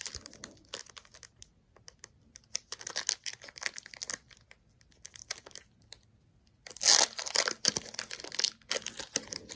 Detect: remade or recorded recorded